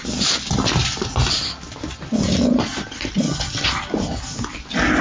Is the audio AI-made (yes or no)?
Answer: no